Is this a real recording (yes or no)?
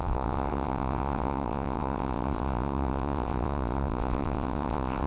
no